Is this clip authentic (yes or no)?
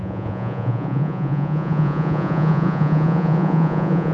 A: no